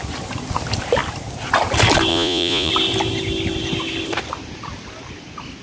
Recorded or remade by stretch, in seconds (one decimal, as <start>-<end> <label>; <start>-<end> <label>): 0.0-2.1 recorded; 2.1-2.7 remade; 2.7-5.6 recorded